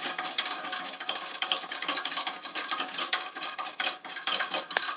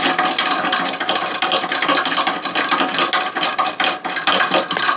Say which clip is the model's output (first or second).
first